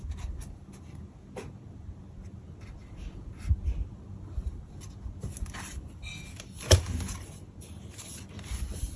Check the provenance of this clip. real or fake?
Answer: real